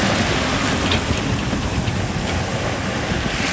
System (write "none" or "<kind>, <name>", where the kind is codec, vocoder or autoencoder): none